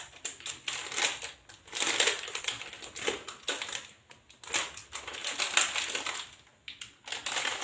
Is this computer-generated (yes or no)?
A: no